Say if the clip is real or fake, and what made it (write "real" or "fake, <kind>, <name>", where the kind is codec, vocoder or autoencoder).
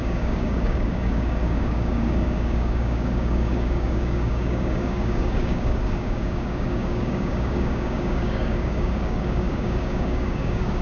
fake, codec, DAC